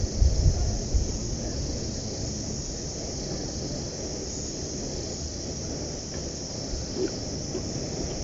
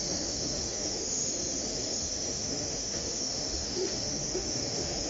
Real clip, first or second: first